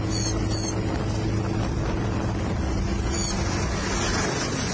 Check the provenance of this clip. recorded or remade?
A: recorded